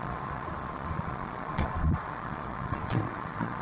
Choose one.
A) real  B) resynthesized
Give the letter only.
B